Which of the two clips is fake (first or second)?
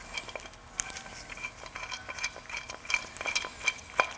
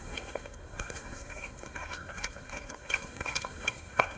second